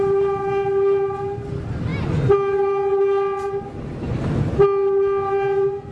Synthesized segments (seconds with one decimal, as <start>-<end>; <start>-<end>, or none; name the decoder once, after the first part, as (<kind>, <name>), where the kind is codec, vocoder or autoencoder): none

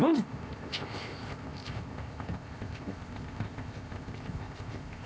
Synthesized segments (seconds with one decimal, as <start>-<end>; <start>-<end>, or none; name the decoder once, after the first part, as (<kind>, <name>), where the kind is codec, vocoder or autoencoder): 0.0-5.1 (codec, ZipCodec)

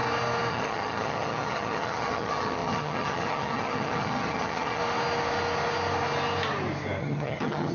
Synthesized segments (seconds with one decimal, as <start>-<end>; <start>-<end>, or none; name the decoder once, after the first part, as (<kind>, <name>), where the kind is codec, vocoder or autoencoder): 0.5-4.8 (vocoder, HiFi-GAN); 7.0-7.7

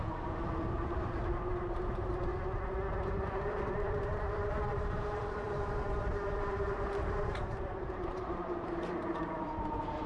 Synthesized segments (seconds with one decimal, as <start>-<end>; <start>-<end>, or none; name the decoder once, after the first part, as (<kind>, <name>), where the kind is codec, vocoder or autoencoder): 0.0-2.3 (vocoder, BigVGAN v2); 3.1-10.1

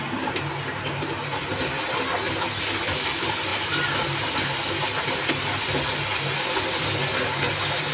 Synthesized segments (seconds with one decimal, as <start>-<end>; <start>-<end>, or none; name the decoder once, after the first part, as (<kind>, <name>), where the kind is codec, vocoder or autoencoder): none

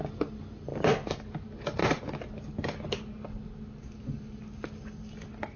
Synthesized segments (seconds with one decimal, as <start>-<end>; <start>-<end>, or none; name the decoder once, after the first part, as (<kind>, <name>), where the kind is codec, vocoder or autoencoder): none

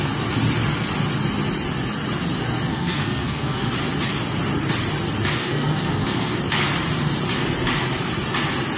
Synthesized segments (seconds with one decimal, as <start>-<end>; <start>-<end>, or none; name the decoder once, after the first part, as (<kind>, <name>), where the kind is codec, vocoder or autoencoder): 2.7-3.7 (codec, SNAC); 5.4-6.4